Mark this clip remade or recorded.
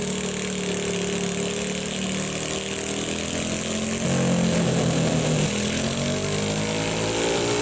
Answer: recorded